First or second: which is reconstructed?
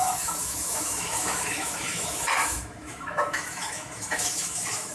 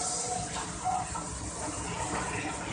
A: first